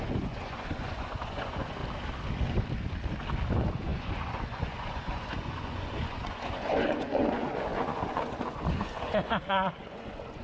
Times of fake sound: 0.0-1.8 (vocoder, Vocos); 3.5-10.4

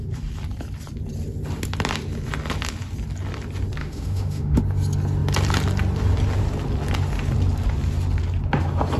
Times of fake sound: 3.8-4.6 (autoencoder, DAC-VAE)

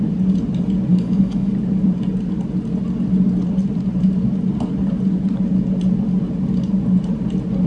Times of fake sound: 0.9-1.5 (autoencoder, DAC-VAE)

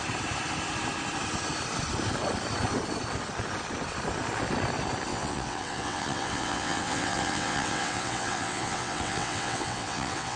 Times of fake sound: 5.1-10.4 (vocoder, WaveNeXt)